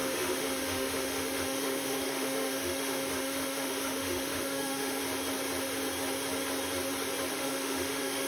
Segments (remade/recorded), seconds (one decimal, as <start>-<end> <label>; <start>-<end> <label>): 0.0-5.0 remade; 5.0-7.3 recorded; 7.3-8.3 remade